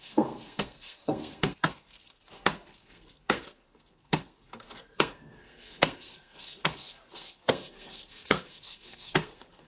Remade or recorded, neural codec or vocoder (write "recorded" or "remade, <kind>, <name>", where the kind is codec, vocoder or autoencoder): remade, codec, SNAC